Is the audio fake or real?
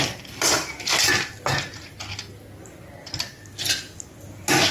real